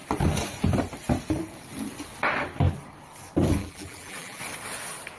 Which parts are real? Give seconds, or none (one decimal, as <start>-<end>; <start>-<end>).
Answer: 0.0-3.6; 4.4-5.2